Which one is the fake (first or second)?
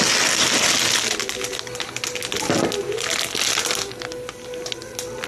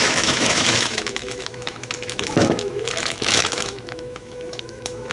second